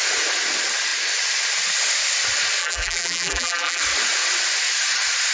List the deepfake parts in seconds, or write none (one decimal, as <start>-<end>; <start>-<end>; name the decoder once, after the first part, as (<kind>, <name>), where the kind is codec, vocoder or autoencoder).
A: 2.6-3.8 (vocoder, BigVGAN v2)